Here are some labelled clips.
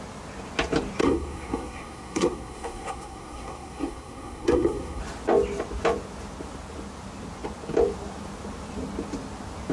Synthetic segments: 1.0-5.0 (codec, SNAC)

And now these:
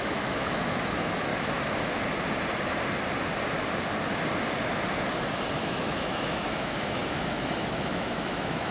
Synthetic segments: 0.0-1.3 (autoencoder, DAC-VAE); 5.6-8.7

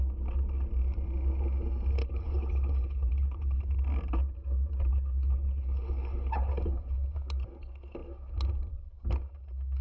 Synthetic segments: 2.0-3.6 (codec, HILCodec); 4.9-6.5

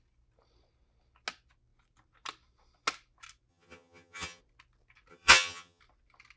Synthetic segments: 3.5-4.4 (vocoder, HiFi-GAN); 5.1-5.8

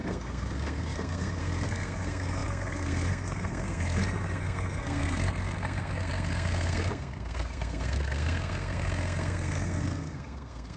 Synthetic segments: 0.0-10.8 (codec, SNAC)

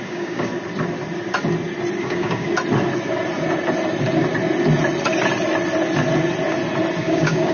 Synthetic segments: 0.0-0.5 (codec, DAC); 2.0-2.5; 7.0-7.5

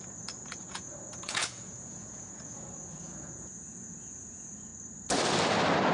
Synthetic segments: 0.0-4.7 (vocoder, Vocos)